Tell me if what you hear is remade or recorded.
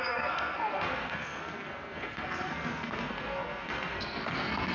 remade